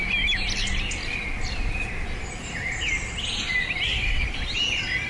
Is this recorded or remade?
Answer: recorded